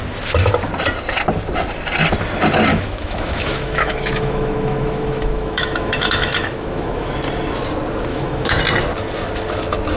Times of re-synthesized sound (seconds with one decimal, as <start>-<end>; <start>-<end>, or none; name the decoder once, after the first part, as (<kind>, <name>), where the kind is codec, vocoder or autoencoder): 2.7-7.1 (autoencoder, DAC-VAE); 8.1-8.6